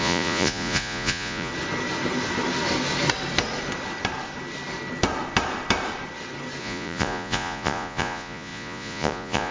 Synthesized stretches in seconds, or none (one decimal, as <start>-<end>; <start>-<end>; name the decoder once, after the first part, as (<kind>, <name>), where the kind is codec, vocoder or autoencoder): 0.0-1.5 (vocoder, Vocos); 6.6-9.5

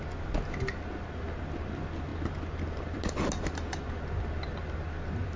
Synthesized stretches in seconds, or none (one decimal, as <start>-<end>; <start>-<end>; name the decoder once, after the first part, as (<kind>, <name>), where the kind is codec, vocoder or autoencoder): none

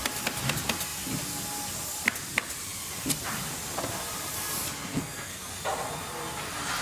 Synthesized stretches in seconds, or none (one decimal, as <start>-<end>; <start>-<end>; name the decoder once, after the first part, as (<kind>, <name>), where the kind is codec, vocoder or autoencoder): 4.9-5.5 (codec, SNAC)